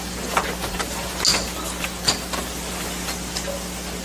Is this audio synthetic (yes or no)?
no